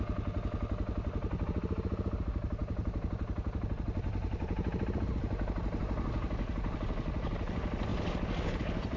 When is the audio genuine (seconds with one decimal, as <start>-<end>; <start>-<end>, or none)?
0.0-9.0